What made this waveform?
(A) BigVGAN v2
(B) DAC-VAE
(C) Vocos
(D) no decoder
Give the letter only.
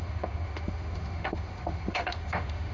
B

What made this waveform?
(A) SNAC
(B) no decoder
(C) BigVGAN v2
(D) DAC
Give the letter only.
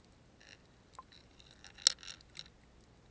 B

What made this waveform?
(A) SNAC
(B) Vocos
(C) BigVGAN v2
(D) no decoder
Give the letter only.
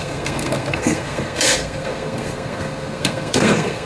A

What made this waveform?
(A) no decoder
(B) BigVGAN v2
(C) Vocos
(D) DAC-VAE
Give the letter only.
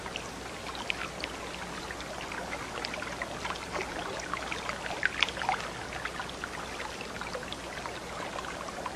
A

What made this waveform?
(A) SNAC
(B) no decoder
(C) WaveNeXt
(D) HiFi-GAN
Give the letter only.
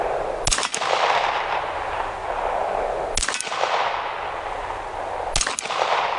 B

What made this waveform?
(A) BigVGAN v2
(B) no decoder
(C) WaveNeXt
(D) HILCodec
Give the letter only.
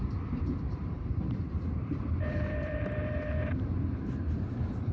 A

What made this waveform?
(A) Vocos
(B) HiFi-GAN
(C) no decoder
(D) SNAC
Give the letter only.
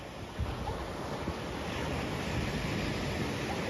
C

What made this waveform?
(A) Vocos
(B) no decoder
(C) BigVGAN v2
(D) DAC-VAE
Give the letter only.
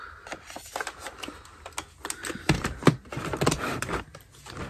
B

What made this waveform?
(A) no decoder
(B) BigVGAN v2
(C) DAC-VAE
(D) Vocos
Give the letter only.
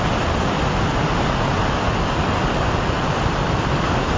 A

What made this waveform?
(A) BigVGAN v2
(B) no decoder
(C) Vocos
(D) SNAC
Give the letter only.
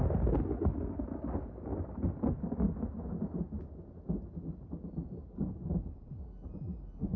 B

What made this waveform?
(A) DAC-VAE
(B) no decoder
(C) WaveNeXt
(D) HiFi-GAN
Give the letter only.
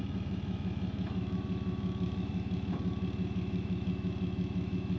A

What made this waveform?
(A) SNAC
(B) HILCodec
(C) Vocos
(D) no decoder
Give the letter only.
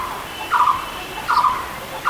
D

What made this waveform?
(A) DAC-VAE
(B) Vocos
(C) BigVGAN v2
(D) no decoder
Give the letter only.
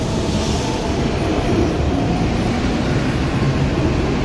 D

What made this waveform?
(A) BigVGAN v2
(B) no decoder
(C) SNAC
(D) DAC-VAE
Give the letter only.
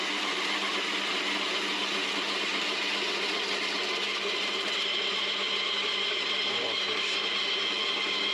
B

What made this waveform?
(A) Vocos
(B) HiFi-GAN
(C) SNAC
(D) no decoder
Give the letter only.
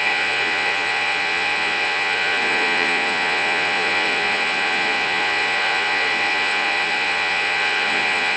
A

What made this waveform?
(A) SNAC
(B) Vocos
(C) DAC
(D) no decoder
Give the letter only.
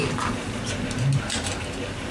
D